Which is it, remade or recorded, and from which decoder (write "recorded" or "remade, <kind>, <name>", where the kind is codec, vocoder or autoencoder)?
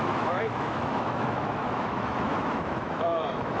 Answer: remade, autoencoder, DAC-VAE